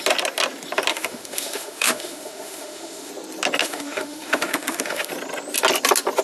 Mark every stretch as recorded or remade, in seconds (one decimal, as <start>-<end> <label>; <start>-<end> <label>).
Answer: 0.0-0.9 recorded; 0.9-3.1 remade; 3.1-3.6 recorded; 3.6-5.1 remade; 5.1-6.2 recorded